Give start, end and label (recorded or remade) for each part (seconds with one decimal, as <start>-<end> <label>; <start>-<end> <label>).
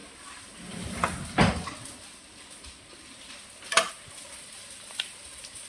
0.0-5.7 recorded